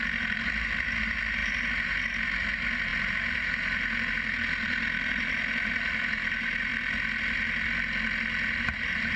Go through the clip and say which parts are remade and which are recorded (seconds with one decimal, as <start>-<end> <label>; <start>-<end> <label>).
0.0-6.7 remade; 6.7-8.6 recorded; 8.6-9.2 remade